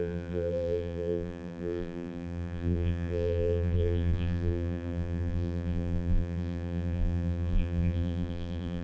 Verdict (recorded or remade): remade